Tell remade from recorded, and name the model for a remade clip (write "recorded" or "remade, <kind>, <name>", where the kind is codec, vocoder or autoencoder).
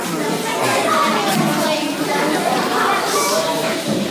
recorded